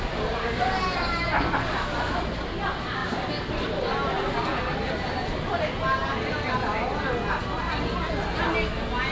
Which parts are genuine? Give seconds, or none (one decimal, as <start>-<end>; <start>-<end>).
0.0-9.1